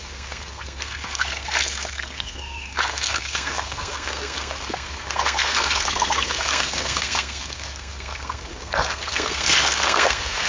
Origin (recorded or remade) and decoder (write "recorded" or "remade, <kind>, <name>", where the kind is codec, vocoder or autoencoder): remade, codec, SNAC